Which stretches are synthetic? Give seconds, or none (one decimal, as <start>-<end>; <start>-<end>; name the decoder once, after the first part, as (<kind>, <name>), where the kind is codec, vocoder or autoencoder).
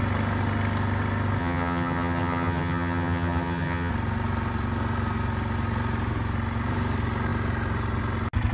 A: 1.4-3.9 (vocoder, HiFi-GAN)